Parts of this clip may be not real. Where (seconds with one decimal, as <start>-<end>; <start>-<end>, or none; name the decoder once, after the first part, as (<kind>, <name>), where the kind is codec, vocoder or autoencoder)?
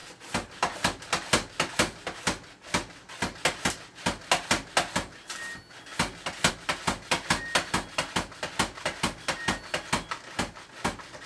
none